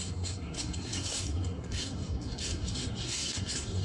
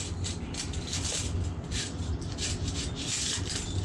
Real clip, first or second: second